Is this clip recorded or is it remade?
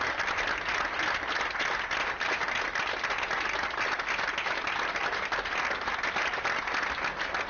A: recorded